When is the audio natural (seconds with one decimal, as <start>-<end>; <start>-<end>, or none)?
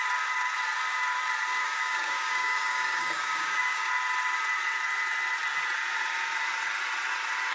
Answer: 0.0-1.6; 3.9-7.5